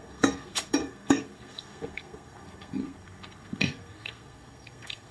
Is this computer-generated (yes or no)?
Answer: yes